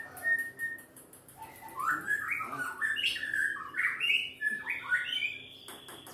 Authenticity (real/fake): real